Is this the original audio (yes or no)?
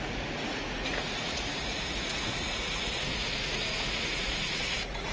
no